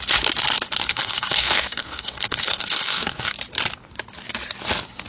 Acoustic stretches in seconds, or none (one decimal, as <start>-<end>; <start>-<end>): 0.0-0.9; 3.3-5.1